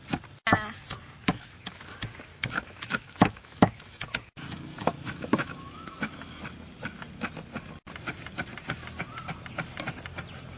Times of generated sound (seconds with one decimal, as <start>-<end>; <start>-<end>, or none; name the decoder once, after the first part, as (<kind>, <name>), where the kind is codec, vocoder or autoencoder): 1.3-1.8 (autoencoder, DAC-VAE); 2.3-6.4